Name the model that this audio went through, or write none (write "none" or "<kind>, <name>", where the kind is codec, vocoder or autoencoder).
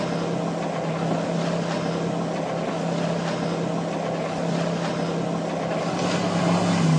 none